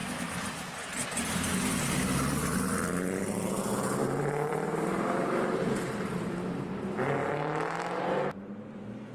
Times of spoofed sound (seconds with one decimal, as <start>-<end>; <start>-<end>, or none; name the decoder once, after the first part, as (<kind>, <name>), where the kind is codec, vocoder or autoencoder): 4.0-6.6 (vocoder, BigVGAN v2)